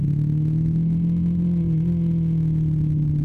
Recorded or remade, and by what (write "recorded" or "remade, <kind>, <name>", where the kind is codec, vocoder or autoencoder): recorded